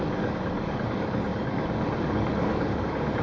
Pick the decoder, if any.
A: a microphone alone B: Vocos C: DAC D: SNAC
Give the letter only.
C